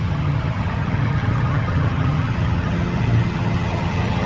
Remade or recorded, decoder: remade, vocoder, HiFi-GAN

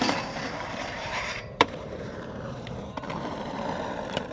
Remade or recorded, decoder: remade, vocoder, BigVGAN v2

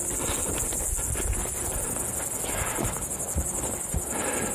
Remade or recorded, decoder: recorded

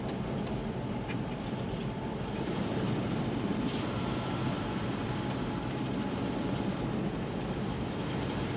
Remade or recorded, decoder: recorded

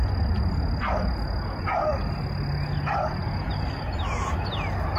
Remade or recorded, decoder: recorded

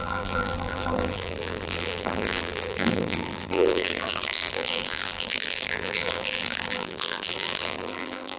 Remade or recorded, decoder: remade, vocoder, BigVGAN v2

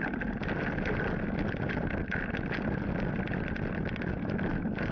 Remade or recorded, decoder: recorded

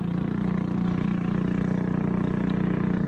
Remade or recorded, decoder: recorded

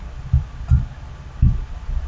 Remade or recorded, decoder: recorded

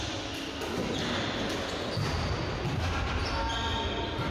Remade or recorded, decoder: recorded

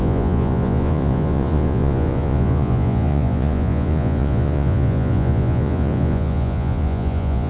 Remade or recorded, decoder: remade, vocoder, Vocos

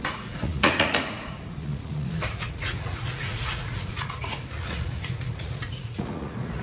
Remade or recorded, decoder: remade, vocoder, Vocos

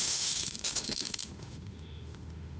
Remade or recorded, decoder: remade, autoencoder, DAC-VAE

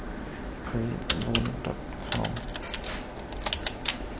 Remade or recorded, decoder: recorded